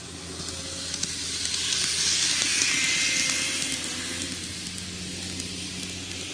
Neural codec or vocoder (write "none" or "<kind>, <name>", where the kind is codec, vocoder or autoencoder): none